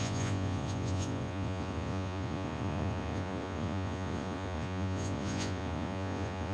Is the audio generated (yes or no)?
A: yes